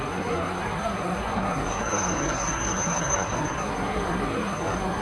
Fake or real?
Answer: fake